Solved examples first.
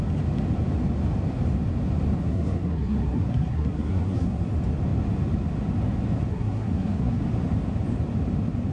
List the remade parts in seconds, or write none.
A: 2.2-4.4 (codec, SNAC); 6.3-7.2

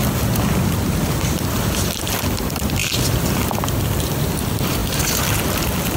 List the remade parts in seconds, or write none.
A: none

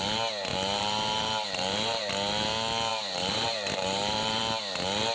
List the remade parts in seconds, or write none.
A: 0.5-2.1 (vocoder, BigVGAN v2); 2.9-4.4

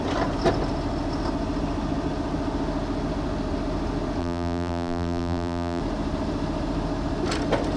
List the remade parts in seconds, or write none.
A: 4.2-5.8 (vocoder, BigVGAN v2)

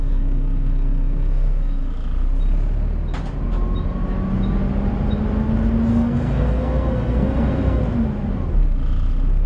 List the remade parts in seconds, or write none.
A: 0.0-1.8 (codec, SNAC); 5.9-7.8

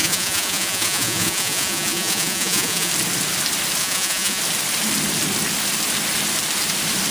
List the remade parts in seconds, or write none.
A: 0.0-2.9 (vocoder, Vocos); 3.8-4.4